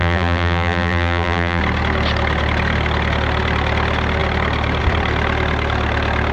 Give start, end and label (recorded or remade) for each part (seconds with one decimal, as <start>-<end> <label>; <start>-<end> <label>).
0.0-1.6 remade; 1.6-6.3 recorded